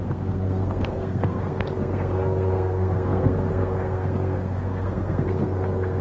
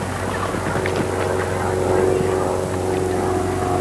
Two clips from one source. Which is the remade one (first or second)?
first